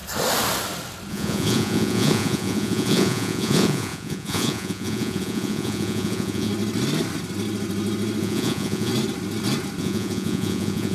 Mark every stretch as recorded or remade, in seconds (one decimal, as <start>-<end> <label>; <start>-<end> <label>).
0.0-1.1 recorded; 1.1-6.5 remade; 6.5-8.2 recorded; 8.2-8.9 remade; 8.9-9.8 recorded; 9.8-10.9 remade

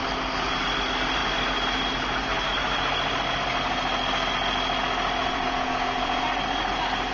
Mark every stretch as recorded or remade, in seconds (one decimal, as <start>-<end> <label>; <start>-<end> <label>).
0.0-5.2 recorded; 5.2-6.2 remade; 6.2-7.1 recorded

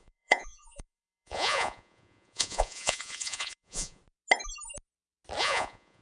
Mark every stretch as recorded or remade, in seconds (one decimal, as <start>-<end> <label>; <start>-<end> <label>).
0.0-4.0 remade; 4.0-5.4 recorded; 5.4-6.0 remade

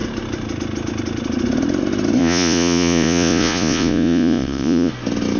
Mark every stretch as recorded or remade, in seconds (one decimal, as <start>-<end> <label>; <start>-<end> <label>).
0.0-2.2 recorded; 2.2-4.9 remade; 4.9-5.4 recorded

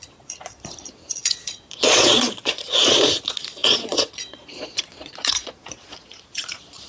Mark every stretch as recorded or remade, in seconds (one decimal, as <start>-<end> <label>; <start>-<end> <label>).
0.0-6.9 remade